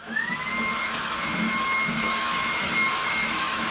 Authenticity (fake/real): fake